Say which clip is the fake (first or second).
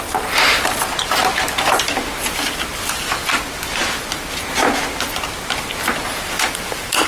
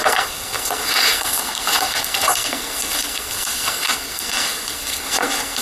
second